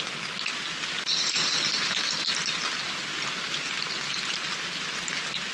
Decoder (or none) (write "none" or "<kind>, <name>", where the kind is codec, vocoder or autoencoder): none